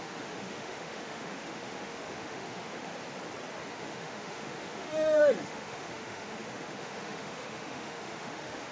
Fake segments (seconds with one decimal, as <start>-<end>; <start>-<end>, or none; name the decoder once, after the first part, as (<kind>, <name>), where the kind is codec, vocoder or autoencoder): 0.0-2.9 (autoencoder, DAC-VAE); 3.7-8.7